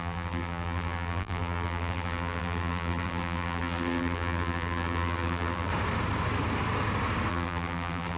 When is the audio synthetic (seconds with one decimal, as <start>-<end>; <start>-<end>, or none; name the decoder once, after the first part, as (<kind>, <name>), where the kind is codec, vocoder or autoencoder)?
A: 0.0-5.7 (vocoder, BigVGAN v2); 7.3-8.2